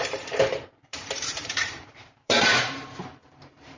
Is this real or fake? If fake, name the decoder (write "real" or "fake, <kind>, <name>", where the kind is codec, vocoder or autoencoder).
fake, vocoder, BigVGAN v2